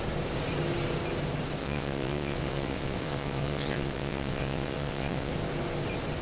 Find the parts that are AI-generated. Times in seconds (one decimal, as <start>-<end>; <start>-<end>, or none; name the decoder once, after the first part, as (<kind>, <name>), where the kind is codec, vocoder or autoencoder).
1.6-5.3 (vocoder, WaveNeXt)